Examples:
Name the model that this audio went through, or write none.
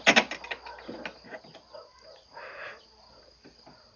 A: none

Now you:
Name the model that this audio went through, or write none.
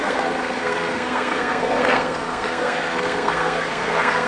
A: codec, SNAC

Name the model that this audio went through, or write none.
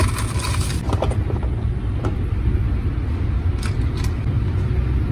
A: none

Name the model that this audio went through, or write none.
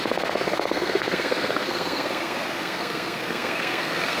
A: codec, SNAC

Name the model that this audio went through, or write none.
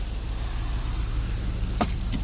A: none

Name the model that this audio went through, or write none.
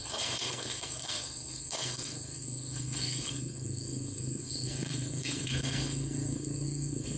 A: codec, SNAC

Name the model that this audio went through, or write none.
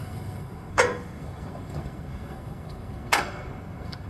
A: codec, SNAC